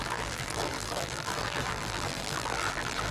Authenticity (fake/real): fake